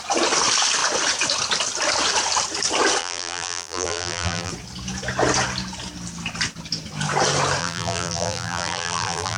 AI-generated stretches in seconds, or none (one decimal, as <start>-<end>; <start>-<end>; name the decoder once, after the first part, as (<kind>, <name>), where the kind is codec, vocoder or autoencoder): 3.0-4.5 (vocoder, BigVGAN v2); 7.6-9.4